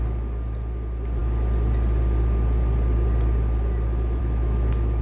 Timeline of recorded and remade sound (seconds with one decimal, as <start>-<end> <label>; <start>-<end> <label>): 0.0-5.0 recorded